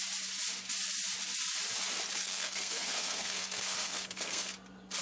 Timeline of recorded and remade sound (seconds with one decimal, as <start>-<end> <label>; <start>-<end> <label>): 0.0-2.2 recorded; 2.2-4.5 remade; 4.5-5.0 recorded